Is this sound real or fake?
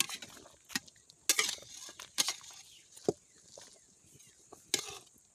real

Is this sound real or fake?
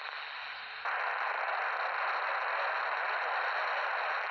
real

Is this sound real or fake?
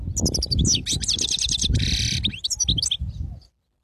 real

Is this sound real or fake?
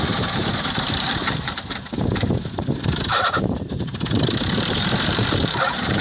fake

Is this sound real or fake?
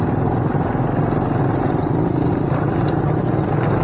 real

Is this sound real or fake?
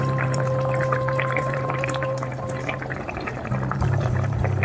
fake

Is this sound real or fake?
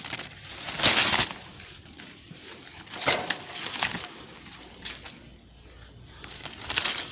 real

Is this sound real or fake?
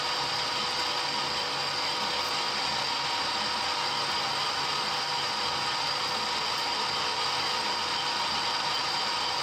real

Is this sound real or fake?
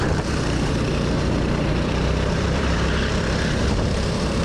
fake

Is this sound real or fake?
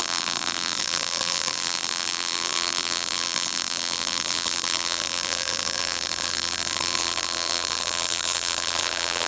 fake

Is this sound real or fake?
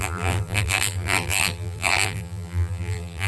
fake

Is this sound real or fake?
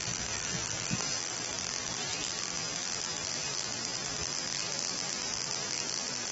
fake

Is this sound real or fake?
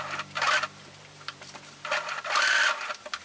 fake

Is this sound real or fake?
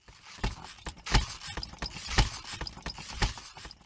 real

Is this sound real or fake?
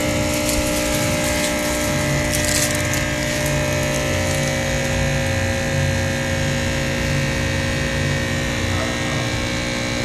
real